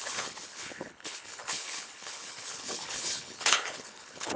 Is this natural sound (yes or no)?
no